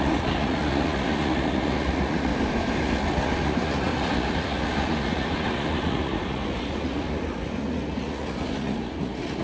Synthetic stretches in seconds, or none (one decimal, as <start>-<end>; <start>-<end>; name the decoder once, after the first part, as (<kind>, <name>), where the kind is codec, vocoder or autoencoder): 0.0-2.3 (vocoder, Vocos); 2.8-9.4